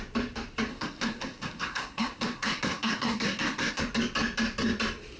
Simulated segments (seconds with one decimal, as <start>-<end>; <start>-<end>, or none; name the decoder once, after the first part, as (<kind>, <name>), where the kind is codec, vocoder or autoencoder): 0.7-3.8 (codec, SNAC)